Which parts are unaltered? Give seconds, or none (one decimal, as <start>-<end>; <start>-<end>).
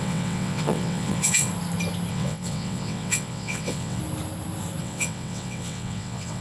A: 1.5-2.1; 4.0-4.8